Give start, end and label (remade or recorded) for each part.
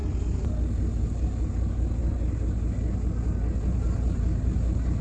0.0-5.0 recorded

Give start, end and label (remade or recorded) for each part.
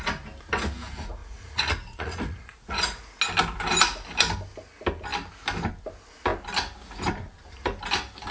0.0-1.2 recorded; 1.2-3.2 remade; 3.2-8.3 recorded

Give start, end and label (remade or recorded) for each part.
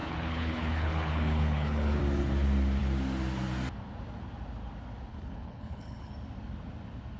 0.0-2.0 remade; 2.0-5.1 recorded; 5.1-6.1 remade; 6.1-7.2 recorded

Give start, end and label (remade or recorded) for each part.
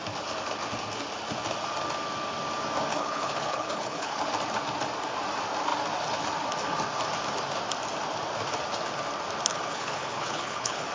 0.0-2.9 recorded; 2.9-4.2 remade; 4.2-9.5 recorded; 9.5-10.9 remade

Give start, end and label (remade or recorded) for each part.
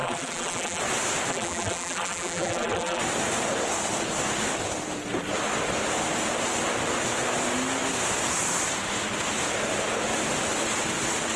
0.0-0.8 remade; 0.8-1.3 recorded; 1.3-3.0 remade; 3.0-11.4 recorded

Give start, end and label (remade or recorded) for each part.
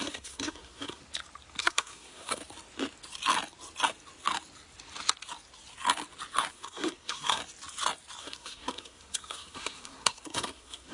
0.0-1.0 remade; 1.0-1.6 recorded; 1.6-2.4 remade; 2.4-6.5 recorded; 6.5-7.4 remade; 7.4-8.2 recorded; 8.2-10.9 remade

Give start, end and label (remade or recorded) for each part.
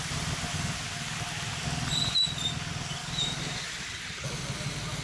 0.0-3.0 recorded; 3.0-3.7 remade; 3.7-5.0 recorded